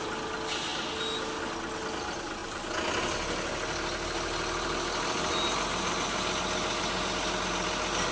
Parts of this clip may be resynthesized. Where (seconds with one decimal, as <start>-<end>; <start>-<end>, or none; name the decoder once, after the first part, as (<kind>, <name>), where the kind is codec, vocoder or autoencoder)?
none